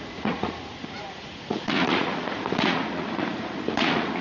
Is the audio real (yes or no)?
no